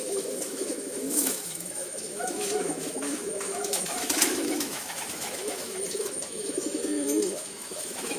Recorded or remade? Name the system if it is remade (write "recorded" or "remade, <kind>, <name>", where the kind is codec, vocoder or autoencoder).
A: remade, autoencoder, DAC-VAE